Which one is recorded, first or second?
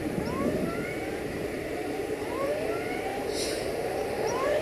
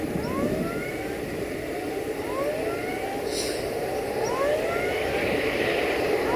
second